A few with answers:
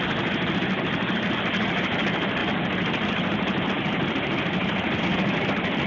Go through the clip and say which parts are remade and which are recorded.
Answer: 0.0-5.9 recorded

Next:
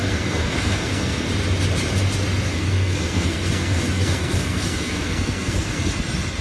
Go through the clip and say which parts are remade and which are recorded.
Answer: 0.0-1.3 remade; 1.3-2.5 recorded; 2.5-5.9 remade; 5.9-6.4 recorded

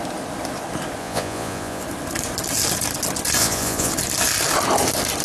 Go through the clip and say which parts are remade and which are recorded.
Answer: 0.0-1.0 recorded; 1.0-1.8 remade; 1.8-3.4 recorded; 3.4-3.9 remade; 3.9-5.2 recorded